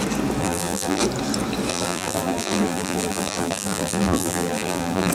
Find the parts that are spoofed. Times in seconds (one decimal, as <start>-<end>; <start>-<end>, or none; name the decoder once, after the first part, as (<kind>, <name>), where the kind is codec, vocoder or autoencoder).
0.4-1.0 (vocoder, BigVGAN v2); 1.7-5.1